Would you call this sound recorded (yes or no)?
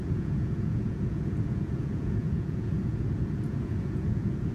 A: no